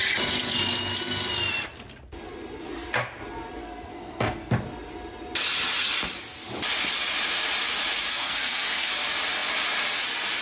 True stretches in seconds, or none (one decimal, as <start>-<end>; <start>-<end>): 0.0-3.6; 4.5-8.1; 8.9-10.4